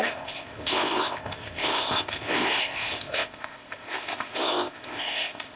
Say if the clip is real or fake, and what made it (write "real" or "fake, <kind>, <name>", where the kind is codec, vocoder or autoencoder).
fake, codec, ZipCodec